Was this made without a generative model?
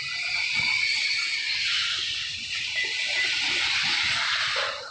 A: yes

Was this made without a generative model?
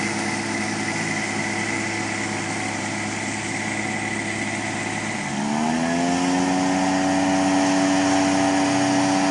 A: yes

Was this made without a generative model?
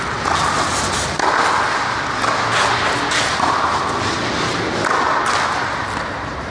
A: yes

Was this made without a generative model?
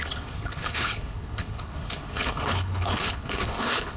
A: no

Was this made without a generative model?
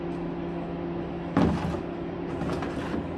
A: yes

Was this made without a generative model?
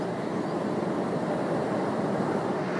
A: yes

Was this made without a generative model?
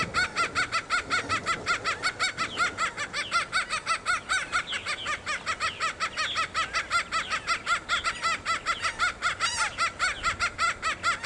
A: yes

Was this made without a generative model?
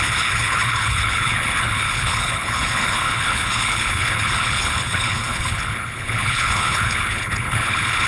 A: no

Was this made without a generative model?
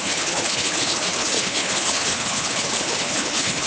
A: no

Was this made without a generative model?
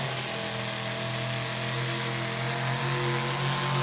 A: yes